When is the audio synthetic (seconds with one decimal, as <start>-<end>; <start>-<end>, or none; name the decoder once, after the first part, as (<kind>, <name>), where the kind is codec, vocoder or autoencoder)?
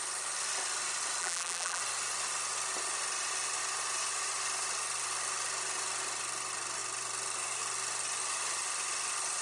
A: 1.2-1.8 (vocoder, BigVGAN v2)